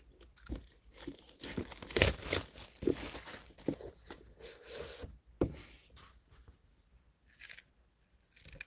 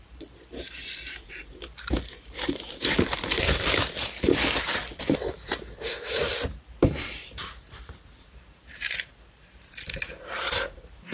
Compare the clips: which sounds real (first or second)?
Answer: first